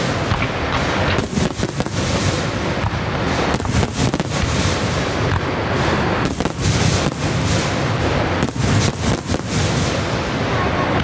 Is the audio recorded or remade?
recorded